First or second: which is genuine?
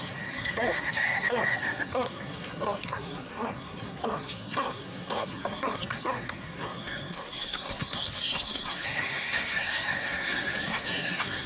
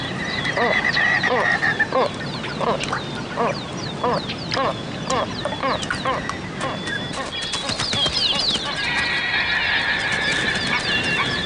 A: second